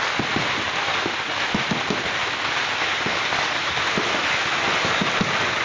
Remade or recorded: recorded